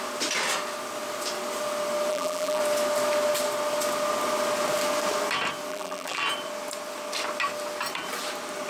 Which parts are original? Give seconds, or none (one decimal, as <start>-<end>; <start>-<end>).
0.0-2.1; 2.6-5.7; 6.2-8.7